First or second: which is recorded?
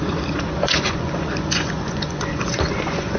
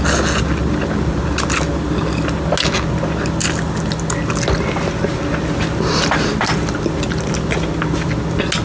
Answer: second